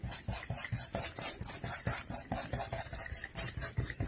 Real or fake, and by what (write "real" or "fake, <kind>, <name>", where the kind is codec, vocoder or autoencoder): real